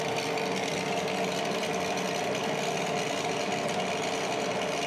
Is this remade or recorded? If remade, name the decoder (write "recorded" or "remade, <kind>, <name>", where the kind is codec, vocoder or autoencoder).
recorded